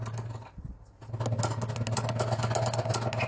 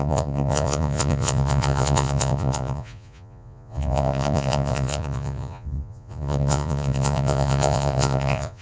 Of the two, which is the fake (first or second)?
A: second